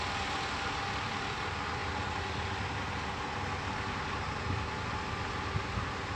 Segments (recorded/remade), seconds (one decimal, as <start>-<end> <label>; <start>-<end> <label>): 0.0-6.2 recorded